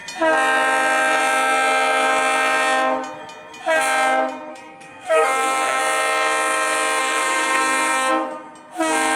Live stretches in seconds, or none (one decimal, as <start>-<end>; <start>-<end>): 0.0-4.5; 5.8-7.0; 8.1-9.2